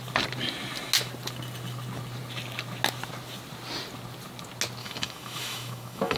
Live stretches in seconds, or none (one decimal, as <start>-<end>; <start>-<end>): 0.0-4.8